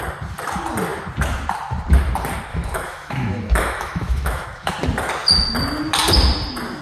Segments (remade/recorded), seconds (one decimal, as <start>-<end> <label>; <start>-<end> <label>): 0.0-2.5 recorded; 2.5-4.7 remade; 4.7-6.8 recorded